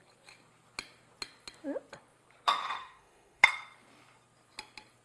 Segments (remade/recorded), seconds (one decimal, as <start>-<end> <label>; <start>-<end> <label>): 0.0-2.6 recorded; 2.6-3.4 remade; 3.4-5.0 recorded